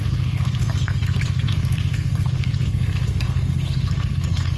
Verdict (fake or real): fake